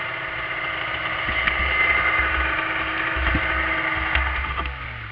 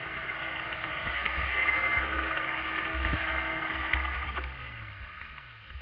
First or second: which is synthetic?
second